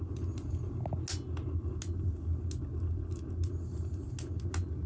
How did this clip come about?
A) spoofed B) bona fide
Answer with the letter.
B